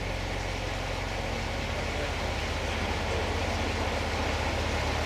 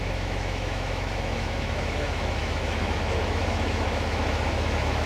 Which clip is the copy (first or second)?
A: second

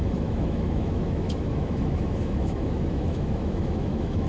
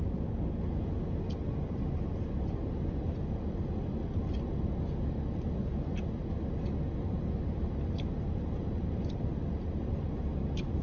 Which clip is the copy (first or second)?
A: first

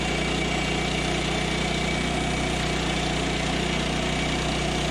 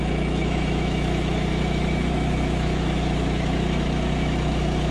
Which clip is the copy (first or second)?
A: second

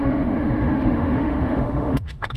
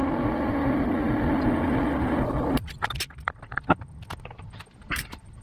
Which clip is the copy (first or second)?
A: first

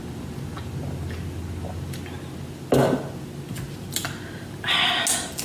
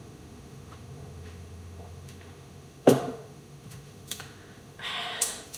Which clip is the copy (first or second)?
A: second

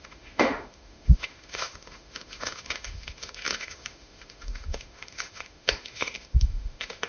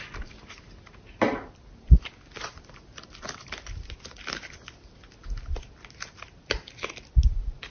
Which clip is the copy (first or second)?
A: first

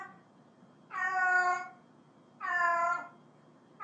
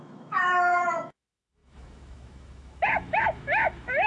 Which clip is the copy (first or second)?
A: second